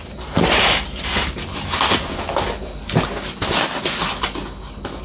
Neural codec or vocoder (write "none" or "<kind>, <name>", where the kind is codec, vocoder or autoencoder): none